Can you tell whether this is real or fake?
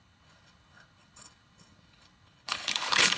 fake